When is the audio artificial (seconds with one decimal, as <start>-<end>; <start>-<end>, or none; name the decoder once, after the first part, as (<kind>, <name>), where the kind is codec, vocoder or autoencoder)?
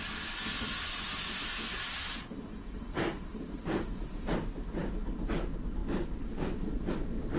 none